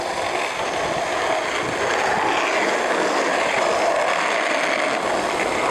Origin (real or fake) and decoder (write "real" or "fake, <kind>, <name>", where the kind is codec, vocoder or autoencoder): real